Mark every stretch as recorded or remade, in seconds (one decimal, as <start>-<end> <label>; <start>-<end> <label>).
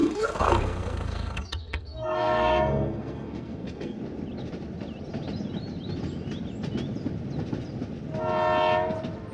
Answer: 0.0-4.0 remade; 4.0-9.3 recorded